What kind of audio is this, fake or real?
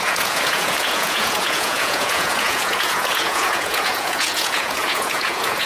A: fake